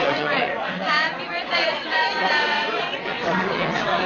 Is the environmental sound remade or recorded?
remade